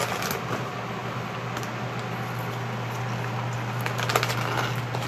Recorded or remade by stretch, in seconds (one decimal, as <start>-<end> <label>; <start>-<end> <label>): 0.0-5.1 recorded